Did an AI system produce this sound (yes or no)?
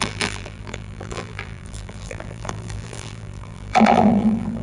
yes